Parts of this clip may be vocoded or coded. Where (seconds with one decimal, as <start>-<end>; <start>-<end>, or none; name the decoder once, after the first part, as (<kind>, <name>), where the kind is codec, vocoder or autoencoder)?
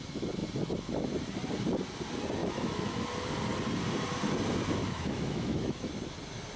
2.4-3.0 (autoencoder, DAC-VAE); 4.8-5.9